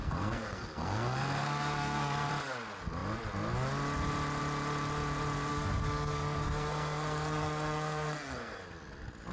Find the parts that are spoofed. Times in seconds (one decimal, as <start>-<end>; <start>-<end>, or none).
0.0-2.3; 5.5-8.6